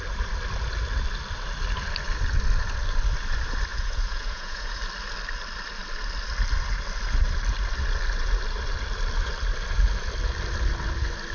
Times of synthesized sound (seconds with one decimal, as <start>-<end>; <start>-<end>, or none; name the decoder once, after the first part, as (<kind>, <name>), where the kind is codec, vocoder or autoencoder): 3.7-4.8 (vocoder, Vocos)